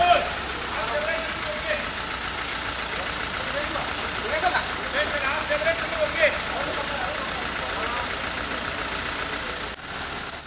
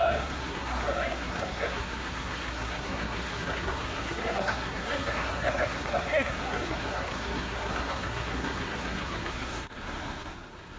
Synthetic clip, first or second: second